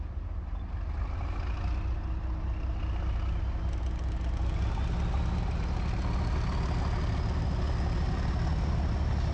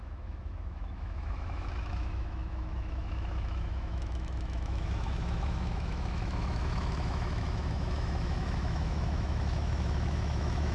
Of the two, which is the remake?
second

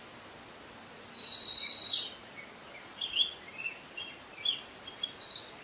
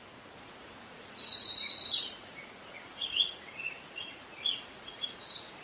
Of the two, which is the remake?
second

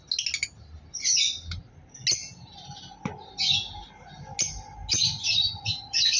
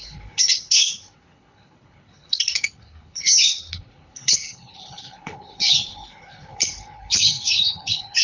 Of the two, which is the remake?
second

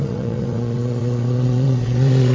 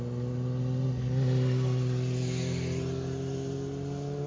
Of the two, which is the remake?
first